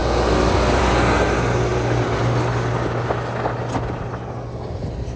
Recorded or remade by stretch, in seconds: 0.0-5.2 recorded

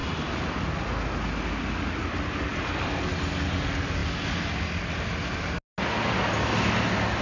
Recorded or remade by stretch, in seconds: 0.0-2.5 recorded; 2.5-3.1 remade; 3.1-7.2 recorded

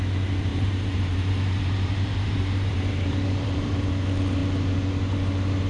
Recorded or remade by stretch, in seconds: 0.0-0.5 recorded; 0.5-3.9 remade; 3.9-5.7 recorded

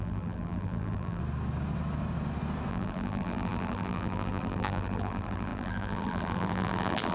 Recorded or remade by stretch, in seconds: 0.0-1.2 remade; 1.2-2.7 recorded; 2.7-7.1 remade